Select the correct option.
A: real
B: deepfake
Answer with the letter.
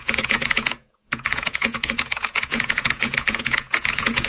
B